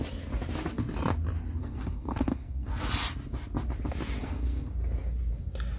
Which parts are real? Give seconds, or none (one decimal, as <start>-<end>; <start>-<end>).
0.0-1.6; 2.8-4.2; 4.7-5.8